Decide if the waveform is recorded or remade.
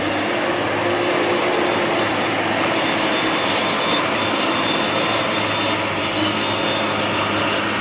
recorded